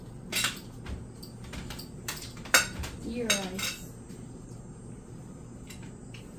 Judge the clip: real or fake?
real